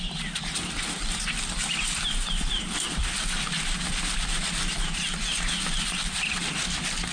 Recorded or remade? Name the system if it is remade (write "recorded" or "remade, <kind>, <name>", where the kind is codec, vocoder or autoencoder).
recorded